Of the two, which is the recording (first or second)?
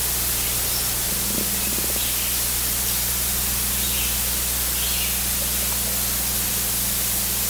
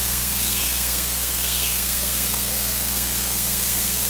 first